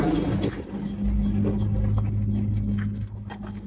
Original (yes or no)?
yes